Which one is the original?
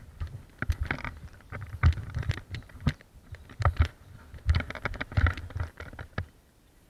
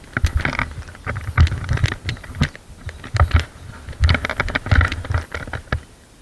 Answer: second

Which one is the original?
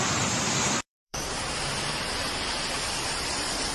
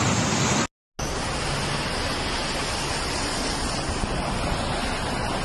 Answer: second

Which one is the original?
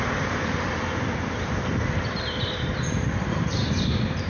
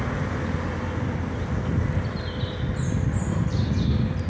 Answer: second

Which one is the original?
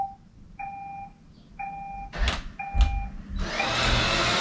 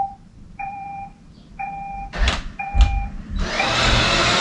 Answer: first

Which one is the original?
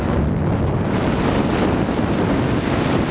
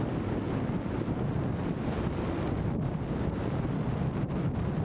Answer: first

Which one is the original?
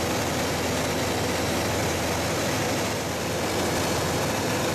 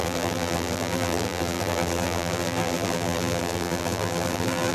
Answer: first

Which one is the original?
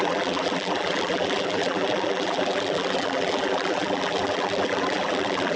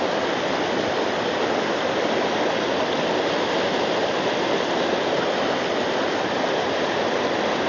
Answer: second